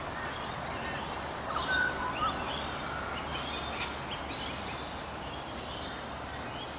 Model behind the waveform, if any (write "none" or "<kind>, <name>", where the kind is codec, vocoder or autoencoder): none